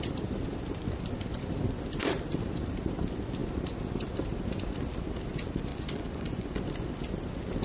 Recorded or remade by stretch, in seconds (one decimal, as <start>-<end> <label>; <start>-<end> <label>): 0.0-5.7 recorded; 5.7-6.6 remade; 6.6-7.6 recorded